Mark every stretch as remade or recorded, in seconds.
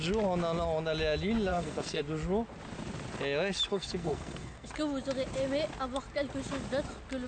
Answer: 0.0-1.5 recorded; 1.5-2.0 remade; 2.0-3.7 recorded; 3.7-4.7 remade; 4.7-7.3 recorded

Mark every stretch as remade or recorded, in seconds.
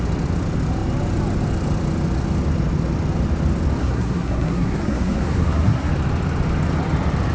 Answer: 0.0-3.8 recorded; 3.8-5.9 remade; 5.9-7.3 recorded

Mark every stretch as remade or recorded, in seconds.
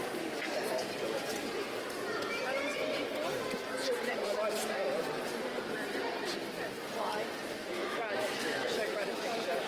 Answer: 0.0-7.6 recorded; 7.6-9.7 remade